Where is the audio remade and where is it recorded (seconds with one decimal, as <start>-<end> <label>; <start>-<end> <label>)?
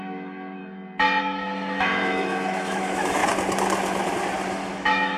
0.0-0.6 remade; 0.6-1.2 recorded; 1.2-3.2 remade; 3.2-4.5 recorded; 4.5-5.2 remade